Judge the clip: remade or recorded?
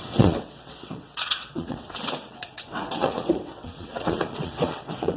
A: remade